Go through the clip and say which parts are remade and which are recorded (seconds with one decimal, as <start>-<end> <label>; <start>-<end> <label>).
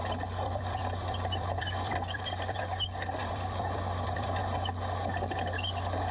0.0-2.6 remade; 2.6-3.2 recorded; 3.2-4.4 remade; 4.4-6.1 recorded